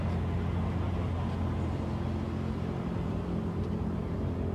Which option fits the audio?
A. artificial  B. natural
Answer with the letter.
B